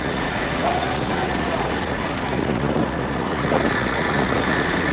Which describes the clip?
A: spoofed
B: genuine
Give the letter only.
A